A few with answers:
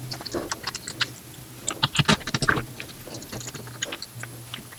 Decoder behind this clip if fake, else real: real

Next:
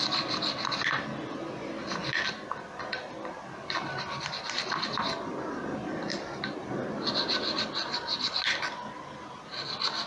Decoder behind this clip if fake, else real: real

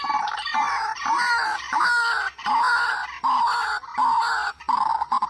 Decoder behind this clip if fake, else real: real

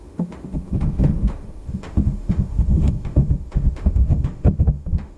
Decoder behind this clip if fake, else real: fake, autoencoder, DAC-VAE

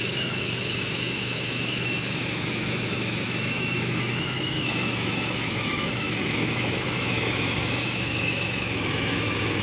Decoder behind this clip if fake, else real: fake, autoencoder, DAC-VAE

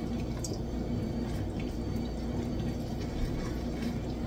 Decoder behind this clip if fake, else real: real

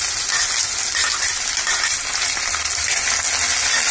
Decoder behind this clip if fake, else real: real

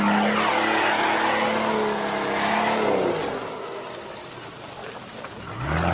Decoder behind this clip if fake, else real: real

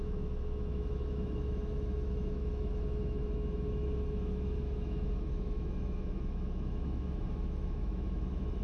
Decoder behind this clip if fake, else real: fake, autoencoder, DAC-VAE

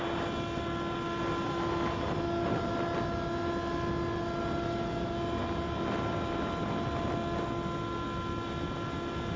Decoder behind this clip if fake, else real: real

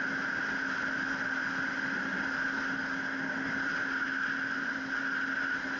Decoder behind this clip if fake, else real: real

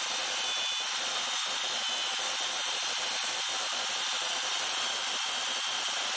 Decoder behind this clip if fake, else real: real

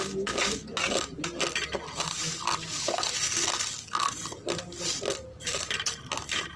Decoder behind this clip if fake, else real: real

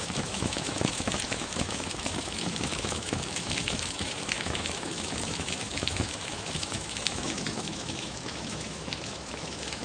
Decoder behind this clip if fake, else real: fake, autoencoder, DAC-VAE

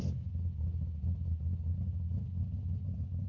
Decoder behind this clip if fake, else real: real